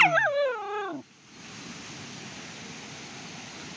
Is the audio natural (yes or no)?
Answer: yes